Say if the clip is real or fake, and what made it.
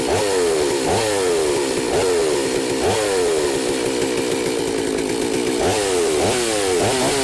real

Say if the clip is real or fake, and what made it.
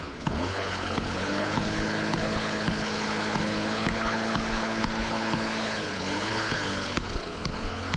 fake, codec, HILCodec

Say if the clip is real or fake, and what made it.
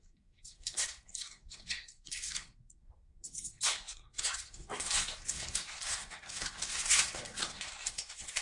fake, codec, SNAC